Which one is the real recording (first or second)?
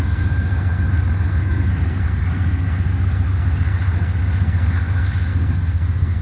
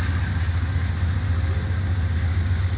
second